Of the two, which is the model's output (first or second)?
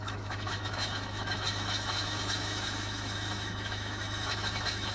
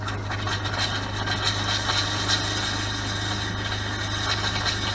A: first